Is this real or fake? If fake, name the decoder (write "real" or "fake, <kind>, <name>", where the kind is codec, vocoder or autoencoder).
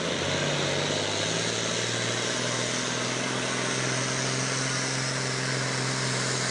real